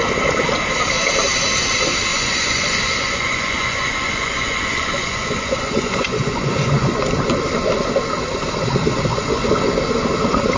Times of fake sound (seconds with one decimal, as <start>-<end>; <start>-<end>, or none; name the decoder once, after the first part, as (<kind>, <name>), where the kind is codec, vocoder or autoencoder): 2.1-7.1 (vocoder, Vocos); 9.1-9.6